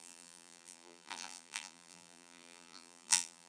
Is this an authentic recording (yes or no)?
no